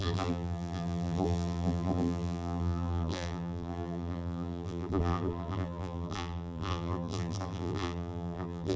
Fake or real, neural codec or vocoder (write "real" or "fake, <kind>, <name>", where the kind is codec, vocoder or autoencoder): fake, vocoder, BigVGAN v2